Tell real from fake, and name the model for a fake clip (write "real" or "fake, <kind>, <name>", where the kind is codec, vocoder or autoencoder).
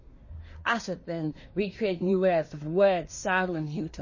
fake, codec, SNAC